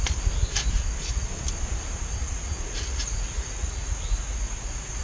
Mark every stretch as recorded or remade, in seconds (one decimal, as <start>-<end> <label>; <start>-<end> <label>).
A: 0.0-2.2 recorded; 2.2-5.0 remade

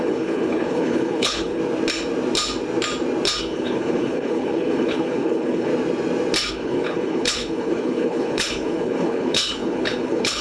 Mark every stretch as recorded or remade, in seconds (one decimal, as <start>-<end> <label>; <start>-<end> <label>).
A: 0.0-1.6 remade; 1.6-3.4 recorded; 3.4-5.7 remade; 5.7-6.5 recorded; 6.5-10.4 remade

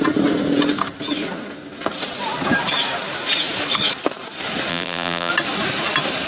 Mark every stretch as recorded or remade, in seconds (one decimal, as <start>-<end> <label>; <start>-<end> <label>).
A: 0.0-4.7 recorded; 4.7-5.3 remade; 5.3-6.3 recorded

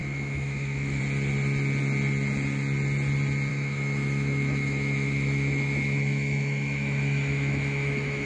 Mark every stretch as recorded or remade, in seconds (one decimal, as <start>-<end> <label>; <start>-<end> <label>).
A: 0.0-1.0 remade; 1.0-3.5 recorded; 3.5-8.3 remade

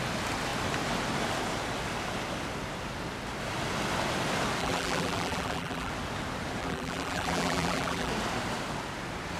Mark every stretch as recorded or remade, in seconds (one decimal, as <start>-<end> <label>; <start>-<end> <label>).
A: 0.0-4.6 recorded; 4.6-5.9 remade; 5.9-6.6 recorded; 6.6-8.1 remade; 8.1-9.4 recorded

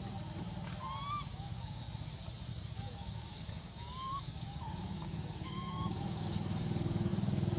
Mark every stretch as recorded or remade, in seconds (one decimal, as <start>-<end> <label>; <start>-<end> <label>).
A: 0.0-1.3 recorded; 1.3-1.8 remade; 1.8-2.5 recorded; 2.5-7.1 remade; 7.1-7.6 recorded